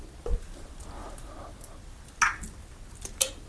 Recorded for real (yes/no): yes